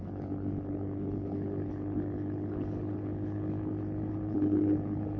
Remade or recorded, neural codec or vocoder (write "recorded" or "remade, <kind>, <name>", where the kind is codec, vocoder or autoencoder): remade, codec, HILCodec